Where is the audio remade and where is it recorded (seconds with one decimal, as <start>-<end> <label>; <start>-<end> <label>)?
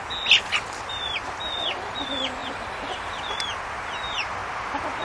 0.0-2.4 recorded; 2.4-3.4 remade; 3.4-5.0 recorded